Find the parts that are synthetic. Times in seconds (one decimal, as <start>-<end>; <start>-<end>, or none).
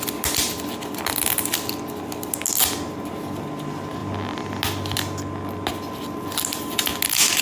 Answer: none